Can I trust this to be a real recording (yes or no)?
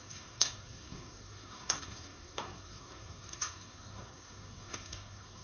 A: no